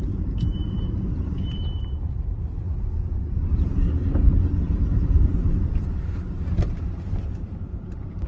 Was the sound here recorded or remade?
remade